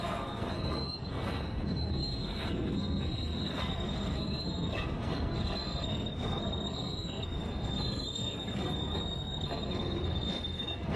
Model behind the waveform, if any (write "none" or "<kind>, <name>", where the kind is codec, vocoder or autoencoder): codec, SNAC